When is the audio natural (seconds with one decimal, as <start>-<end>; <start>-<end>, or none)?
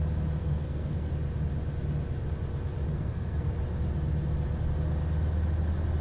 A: 0.0-0.4; 1.1-2.9; 3.5-6.0